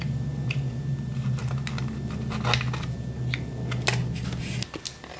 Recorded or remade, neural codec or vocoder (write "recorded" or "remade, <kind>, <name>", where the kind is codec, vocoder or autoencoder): recorded